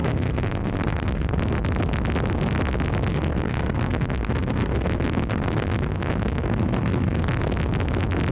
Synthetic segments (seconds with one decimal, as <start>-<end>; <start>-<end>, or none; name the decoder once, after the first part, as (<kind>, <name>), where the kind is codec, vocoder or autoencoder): 0.0-1.4 (codec, SNAC); 3.1-7.2